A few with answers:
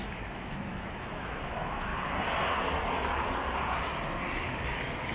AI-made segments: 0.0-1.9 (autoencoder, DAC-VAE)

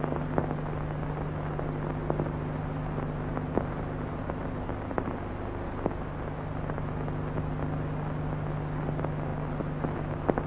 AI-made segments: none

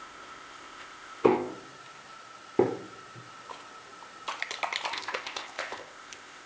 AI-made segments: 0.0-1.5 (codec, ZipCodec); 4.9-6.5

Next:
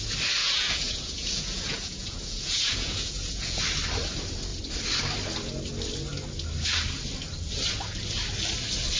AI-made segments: 0.4-3.6 (vocoder, Vocos)